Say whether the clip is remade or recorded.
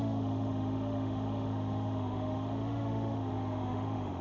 remade